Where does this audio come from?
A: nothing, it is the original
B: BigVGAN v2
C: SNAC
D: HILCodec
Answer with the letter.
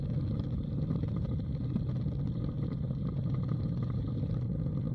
A